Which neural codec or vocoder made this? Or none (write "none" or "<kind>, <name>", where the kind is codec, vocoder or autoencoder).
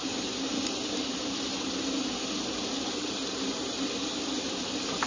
none